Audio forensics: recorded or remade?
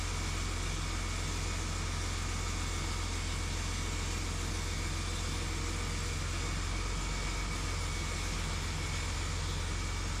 recorded